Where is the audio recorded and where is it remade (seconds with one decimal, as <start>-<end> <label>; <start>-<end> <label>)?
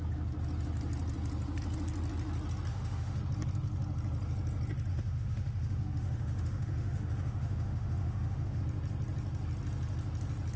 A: 0.0-2.7 recorded; 2.7-3.2 remade; 3.2-4.9 recorded; 4.9-8.6 remade; 8.6-10.6 recorded